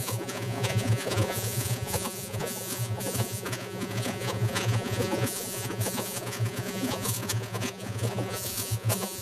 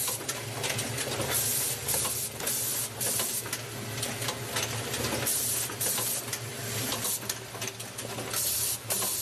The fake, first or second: first